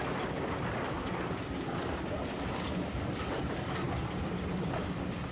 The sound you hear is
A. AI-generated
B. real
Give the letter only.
B